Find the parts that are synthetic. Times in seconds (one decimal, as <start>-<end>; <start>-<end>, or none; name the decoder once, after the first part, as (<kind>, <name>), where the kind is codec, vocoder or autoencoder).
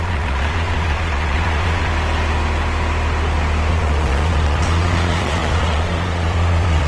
0.0-1.9 (vocoder, Vocos); 3.7-6.9